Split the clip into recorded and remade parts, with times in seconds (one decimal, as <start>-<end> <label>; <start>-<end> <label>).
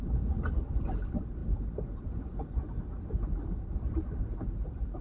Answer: 0.0-5.0 recorded